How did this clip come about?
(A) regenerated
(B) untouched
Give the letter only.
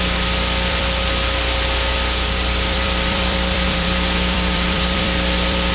A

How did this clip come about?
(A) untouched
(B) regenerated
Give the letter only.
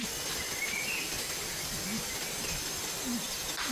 A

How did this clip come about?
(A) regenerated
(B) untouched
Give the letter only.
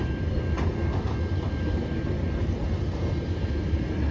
B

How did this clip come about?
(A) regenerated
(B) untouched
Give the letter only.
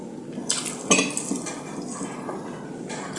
B